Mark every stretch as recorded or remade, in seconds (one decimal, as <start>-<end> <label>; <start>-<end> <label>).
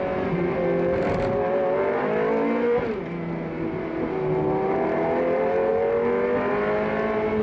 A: 0.0-7.4 recorded